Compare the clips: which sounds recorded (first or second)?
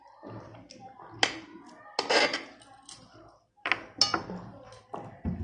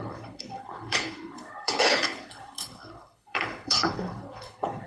first